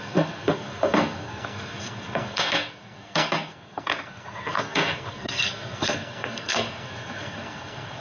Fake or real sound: fake